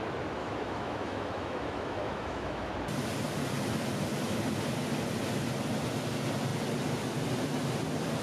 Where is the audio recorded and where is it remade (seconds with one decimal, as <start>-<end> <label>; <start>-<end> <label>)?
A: 0.0-0.4 recorded; 0.4-2.7 remade; 2.7-8.2 recorded